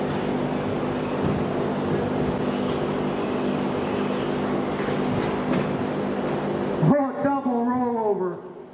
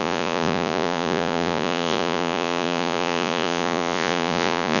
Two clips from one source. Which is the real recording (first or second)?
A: first